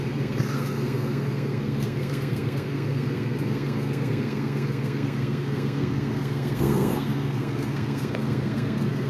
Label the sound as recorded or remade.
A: remade